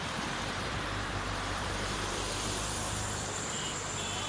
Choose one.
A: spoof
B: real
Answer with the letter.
A